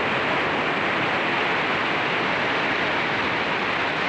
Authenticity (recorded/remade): recorded